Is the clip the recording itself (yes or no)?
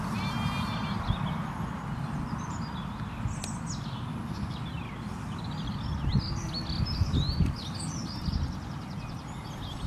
yes